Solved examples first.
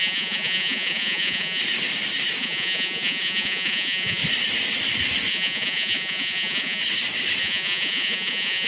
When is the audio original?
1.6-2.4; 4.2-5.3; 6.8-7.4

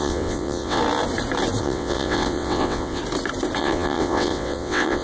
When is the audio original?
0.8-1.6; 3.0-3.6

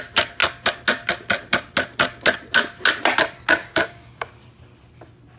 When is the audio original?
0.0-3.6; 4.3-5.4

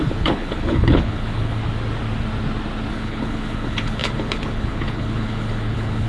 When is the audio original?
1.6-2.9

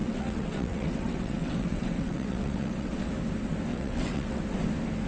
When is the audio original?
3.1-3.7; 4.4-5.1

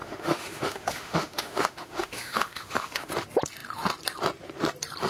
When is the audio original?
3.1-5.1

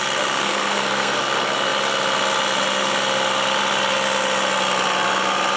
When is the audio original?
0.0-0.4; 1.2-5.6

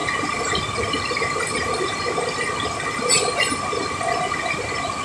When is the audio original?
0.0-5.0